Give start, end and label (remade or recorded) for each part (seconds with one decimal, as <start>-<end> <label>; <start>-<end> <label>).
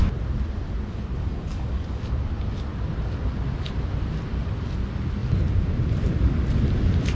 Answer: 0.0-1.2 recorded; 1.2-2.0 remade; 2.0-7.1 recorded